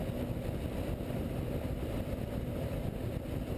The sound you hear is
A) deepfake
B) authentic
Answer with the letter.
B